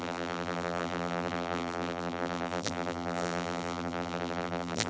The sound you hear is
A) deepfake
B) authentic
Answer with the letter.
A